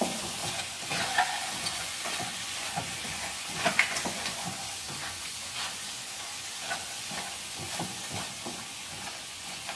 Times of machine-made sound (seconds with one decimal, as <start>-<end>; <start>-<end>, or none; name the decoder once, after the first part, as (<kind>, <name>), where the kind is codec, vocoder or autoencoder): 0.0-9.8 (vocoder, Vocos)